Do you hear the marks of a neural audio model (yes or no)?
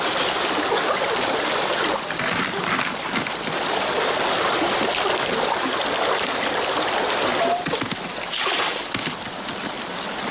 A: no